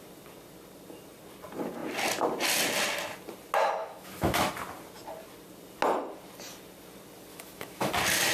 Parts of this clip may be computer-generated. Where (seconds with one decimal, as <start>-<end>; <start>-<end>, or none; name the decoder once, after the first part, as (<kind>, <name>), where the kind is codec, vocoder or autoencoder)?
3.8-4.5 (autoencoder, DAC-VAE); 7.3-7.9